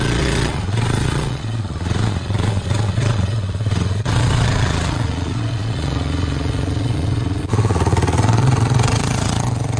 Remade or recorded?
remade